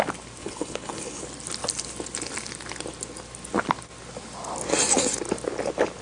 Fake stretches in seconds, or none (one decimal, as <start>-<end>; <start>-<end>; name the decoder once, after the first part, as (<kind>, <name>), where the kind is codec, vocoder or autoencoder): 0.4-1.2 (codec, HILCodec)